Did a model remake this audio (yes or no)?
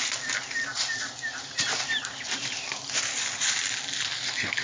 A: no